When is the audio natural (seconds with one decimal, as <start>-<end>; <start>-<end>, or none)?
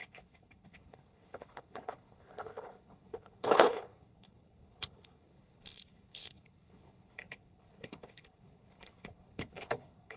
none